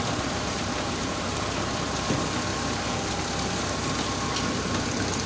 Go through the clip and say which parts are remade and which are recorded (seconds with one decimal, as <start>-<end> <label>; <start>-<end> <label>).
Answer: 0.0-5.3 recorded